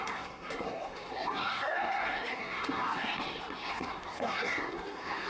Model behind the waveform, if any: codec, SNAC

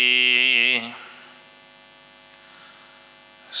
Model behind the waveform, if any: none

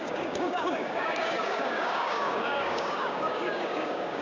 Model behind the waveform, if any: codec, DAC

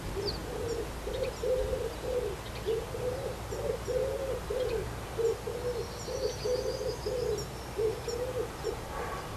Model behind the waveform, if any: none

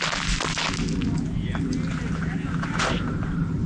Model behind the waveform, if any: none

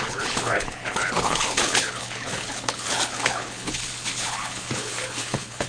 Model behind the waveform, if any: codec, HILCodec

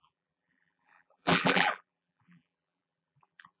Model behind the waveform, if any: vocoder, BigVGAN v2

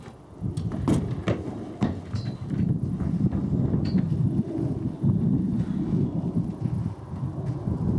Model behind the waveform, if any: none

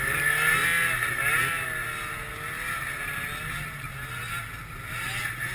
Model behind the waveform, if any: none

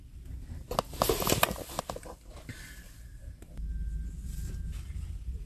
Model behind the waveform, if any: none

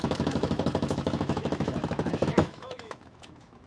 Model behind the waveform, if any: autoencoder, DAC-VAE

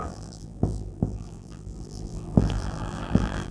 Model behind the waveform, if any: vocoder, BigVGAN v2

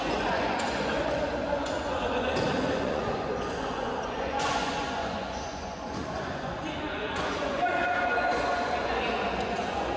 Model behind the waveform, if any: vocoder, Vocos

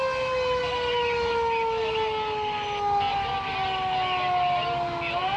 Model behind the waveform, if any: none